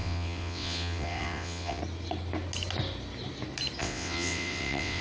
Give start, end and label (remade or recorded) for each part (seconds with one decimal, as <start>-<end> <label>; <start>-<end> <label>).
0.0-1.8 remade; 1.8-3.8 recorded; 3.8-5.0 remade